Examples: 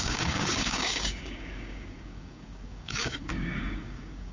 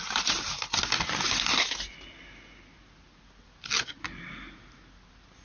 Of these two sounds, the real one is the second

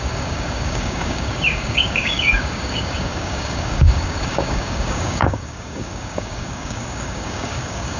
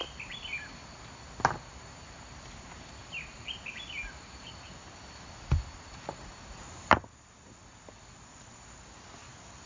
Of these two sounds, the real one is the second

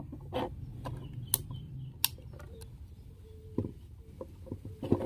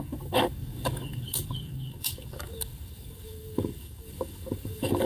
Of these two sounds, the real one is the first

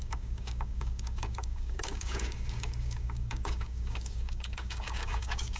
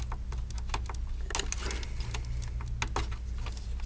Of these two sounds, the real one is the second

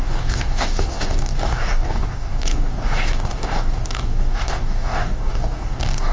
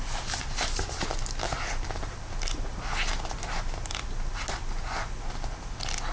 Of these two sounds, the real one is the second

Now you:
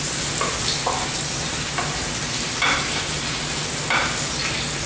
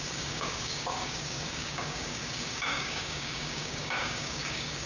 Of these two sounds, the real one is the first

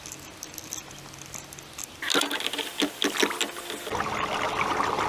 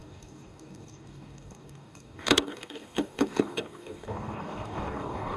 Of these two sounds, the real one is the first